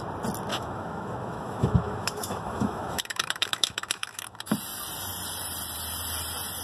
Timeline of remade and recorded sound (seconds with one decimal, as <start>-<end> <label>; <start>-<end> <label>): 0.0-0.5 recorded; 0.5-4.5 remade; 4.5-6.6 recorded